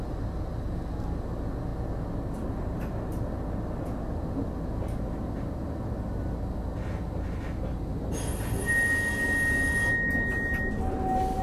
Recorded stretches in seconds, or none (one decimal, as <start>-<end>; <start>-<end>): 0.0-11.4